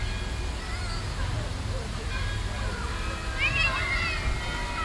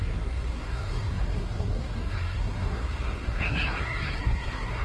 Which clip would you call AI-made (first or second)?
second